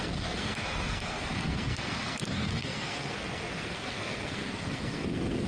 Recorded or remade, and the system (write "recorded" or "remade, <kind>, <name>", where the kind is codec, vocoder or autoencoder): remade, codec, SNAC